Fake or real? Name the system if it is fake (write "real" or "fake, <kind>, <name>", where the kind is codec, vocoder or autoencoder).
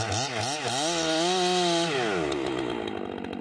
real